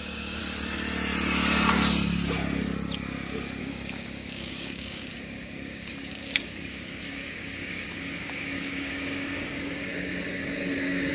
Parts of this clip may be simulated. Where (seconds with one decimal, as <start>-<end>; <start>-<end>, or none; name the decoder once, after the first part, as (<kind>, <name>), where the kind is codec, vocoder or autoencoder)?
0.0-0.4 (codec, DAC); 3.6-11.1